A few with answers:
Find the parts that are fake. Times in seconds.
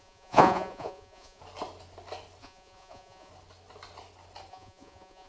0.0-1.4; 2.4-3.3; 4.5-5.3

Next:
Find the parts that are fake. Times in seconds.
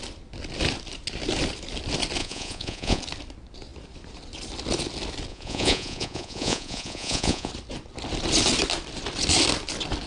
2.2-3.0; 5.3-7.5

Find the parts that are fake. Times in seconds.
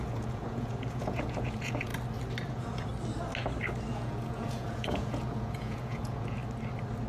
0.0-1.9; 2.5-2.9; 3.9-6.4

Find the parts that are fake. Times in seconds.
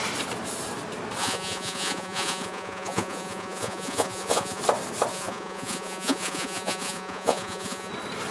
1.2-4.6; 5.1-7.9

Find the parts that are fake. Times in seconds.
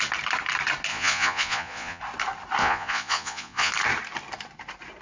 0.9-2.0; 2.6-3.7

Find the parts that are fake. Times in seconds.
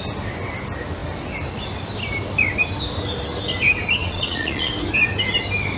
4.0-4.7